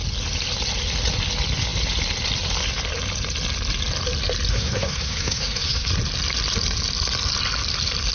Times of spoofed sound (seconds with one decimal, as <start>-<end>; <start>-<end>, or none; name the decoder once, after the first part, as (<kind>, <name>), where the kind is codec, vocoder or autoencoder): 4.5-5.9 (codec, SNAC)